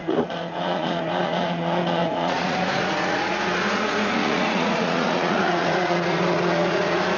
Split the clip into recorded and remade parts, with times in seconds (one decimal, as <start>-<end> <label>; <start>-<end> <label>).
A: 0.0-7.2 remade